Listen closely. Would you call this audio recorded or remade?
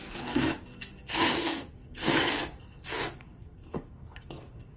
remade